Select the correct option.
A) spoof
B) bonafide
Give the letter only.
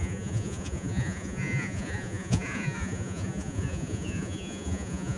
A